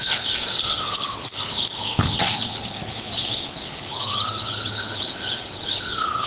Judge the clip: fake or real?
fake